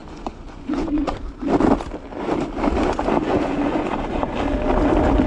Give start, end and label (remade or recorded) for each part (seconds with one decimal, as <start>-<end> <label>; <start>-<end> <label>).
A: 0.0-1.2 remade; 1.2-3.2 recorded; 3.2-4.3 remade; 4.3-5.3 recorded